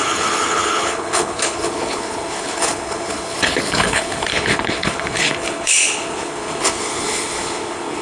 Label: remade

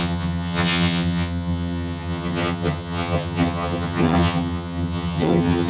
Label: remade